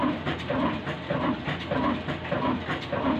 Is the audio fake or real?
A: real